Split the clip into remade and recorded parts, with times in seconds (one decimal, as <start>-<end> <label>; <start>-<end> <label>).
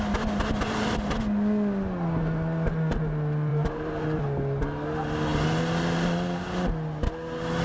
0.0-3.5 recorded; 3.5-4.2 remade; 4.2-7.6 recorded